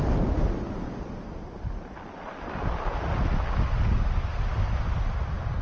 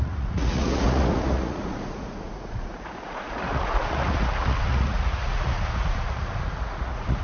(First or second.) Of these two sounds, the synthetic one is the second